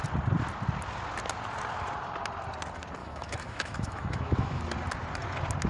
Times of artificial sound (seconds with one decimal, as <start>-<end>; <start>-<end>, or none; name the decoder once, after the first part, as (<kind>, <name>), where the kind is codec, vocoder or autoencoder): 3.0-4.6 (autoencoder, DAC-VAE)

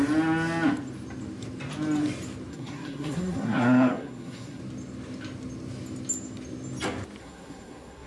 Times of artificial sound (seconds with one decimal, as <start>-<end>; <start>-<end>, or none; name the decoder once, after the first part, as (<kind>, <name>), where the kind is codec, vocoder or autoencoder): 2.5-4.6 (codec, SNAC); 7.2-8.1

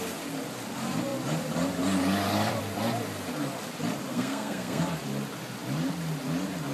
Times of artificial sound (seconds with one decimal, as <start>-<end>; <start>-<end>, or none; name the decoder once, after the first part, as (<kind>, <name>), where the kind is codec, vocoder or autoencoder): 4.1-4.8 (codec, SNAC)

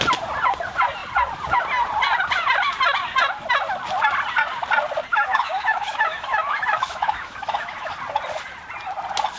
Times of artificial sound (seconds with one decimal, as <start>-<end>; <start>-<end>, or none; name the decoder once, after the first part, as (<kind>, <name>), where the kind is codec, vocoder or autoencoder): 5.1-7.9 (autoencoder, DAC-VAE)

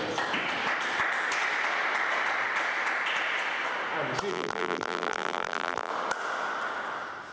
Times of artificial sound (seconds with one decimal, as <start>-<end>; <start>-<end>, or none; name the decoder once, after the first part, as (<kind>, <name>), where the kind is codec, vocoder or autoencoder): 4.3-5.9 (vocoder, BigVGAN v2)

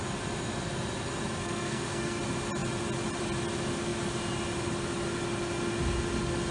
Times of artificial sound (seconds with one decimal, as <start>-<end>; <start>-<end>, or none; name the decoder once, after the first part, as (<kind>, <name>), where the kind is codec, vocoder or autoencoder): 1.4-2.2 (codec, SNAC)

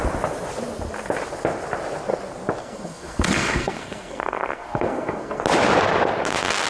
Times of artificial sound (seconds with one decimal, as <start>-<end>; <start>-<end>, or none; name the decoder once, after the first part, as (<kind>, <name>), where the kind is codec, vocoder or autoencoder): 2.6-5.4 (codec, SNAC)